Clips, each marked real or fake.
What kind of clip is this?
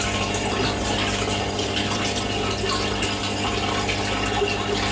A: real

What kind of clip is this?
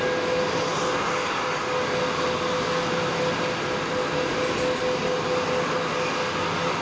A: real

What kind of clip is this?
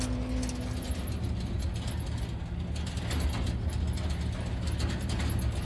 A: real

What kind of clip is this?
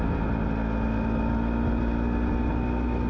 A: real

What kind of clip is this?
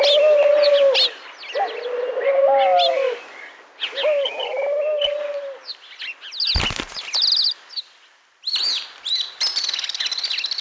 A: real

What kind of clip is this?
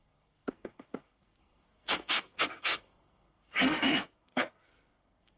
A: fake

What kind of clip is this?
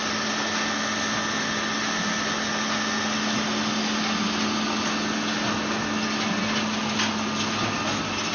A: real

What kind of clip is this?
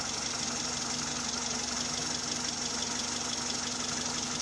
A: real